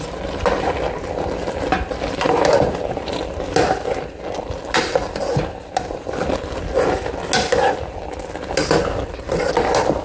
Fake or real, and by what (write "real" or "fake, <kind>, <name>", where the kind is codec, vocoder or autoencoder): real